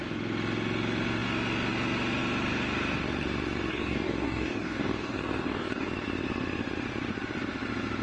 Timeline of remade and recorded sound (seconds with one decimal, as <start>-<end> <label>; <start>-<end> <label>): 0.0-3.7 recorded; 3.7-5.9 remade; 5.9-8.0 recorded